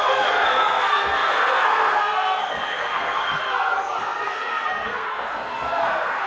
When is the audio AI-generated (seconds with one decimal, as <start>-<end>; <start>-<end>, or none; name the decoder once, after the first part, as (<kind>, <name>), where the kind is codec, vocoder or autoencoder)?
0.0-6.3 (codec, SNAC)